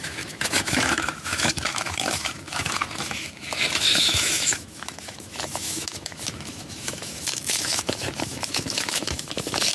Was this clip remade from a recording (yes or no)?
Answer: yes